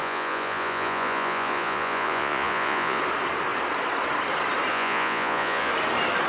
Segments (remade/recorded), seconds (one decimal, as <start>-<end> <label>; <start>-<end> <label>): 0.0-3.0 remade; 3.0-4.7 recorded; 4.7-5.7 remade; 5.7-6.3 recorded